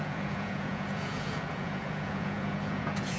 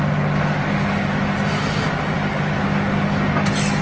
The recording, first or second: second